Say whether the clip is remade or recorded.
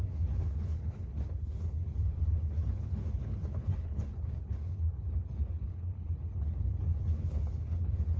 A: remade